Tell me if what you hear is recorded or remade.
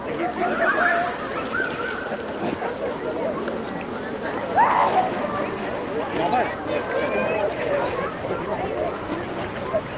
recorded